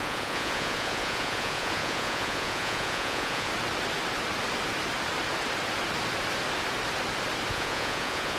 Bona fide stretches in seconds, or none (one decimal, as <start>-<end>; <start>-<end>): 3.5-7.5